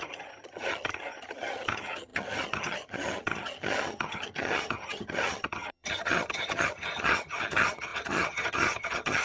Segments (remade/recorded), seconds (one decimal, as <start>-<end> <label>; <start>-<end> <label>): 0.0-9.2 remade

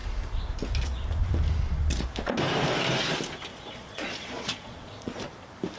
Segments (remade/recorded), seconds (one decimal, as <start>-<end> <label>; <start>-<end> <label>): 0.0-3.5 recorded; 3.5-5.2 remade; 5.2-5.8 recorded

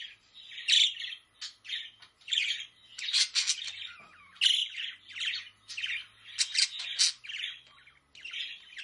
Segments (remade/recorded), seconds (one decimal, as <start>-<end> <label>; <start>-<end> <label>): 0.0-8.8 recorded

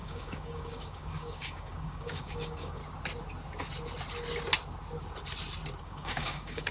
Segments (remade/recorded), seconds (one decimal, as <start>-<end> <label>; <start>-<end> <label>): 0.0-2.8 remade; 2.8-5.8 recorded; 5.8-6.7 remade

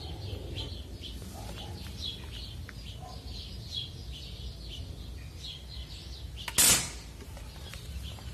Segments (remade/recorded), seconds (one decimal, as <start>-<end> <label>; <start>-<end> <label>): 0.0-8.3 recorded

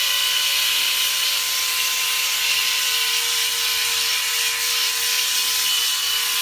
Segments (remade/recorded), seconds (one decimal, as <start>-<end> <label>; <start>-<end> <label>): 0.0-2.6 recorded; 2.6-4.3 remade; 4.3-6.4 recorded